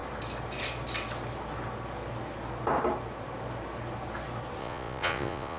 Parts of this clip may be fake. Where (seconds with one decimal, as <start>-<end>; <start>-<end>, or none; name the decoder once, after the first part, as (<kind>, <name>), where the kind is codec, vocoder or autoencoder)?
4.6-5.6 (vocoder, Vocos)